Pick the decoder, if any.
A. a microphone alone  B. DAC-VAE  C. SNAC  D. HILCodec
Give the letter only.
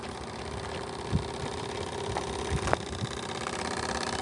A